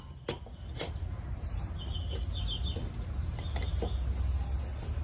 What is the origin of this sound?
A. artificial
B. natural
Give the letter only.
B